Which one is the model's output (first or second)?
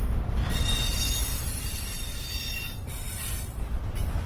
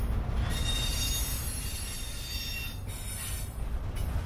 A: first